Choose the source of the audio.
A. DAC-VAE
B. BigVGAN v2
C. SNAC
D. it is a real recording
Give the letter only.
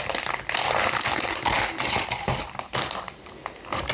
D